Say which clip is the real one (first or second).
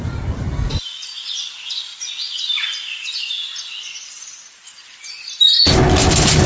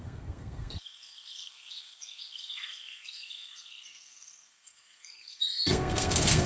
first